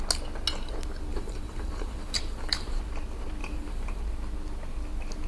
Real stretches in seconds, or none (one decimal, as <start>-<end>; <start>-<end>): 0.0-1.1; 2.8-3.4; 4.0-5.3